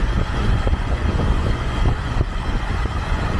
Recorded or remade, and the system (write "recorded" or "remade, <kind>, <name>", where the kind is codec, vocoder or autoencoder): remade, vocoder, Vocos